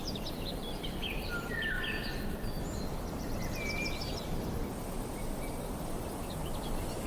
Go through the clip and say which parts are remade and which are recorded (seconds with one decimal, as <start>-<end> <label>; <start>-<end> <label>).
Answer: 0.0-0.5 recorded; 0.5-1.0 remade; 1.0-7.1 recorded